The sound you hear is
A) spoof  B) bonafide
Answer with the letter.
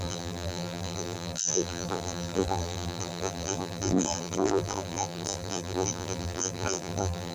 A